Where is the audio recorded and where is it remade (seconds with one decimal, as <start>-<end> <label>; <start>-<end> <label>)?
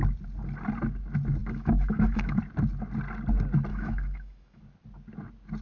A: 0.0-1.4 recorded; 1.4-2.4 remade; 2.4-3.7 recorded; 3.7-4.6 remade; 4.6-5.6 recorded